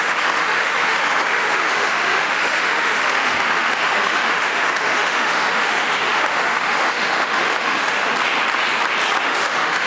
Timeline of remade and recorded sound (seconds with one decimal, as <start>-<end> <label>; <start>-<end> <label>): 0.0-8.0 remade; 8.0-9.2 recorded; 9.2-9.9 remade